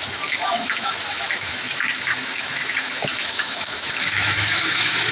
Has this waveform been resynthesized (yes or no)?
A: yes